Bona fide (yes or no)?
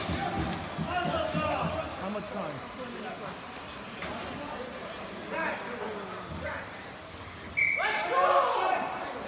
yes